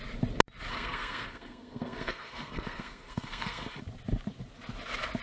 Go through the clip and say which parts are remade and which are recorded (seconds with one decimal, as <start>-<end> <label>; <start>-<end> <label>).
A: 0.0-0.7 recorded; 0.7-3.8 remade; 3.8-5.2 recorded